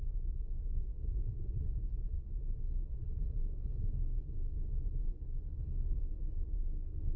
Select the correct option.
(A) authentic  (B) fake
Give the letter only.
B